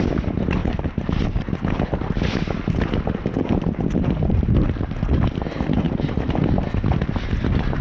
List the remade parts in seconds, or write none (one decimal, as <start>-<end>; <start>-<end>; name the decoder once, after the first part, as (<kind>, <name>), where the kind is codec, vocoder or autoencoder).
none